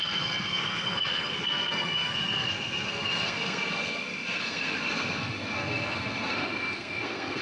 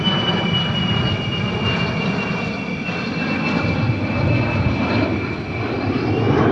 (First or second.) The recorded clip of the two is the second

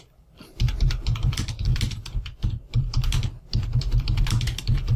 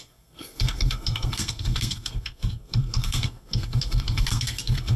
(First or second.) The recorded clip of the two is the first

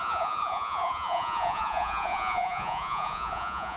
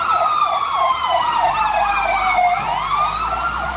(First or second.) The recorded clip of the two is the second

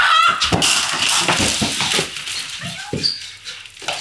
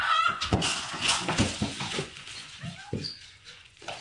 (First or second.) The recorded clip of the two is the first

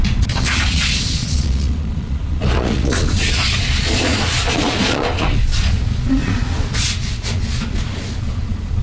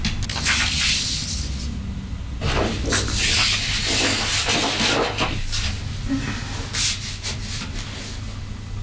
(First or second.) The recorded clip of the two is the second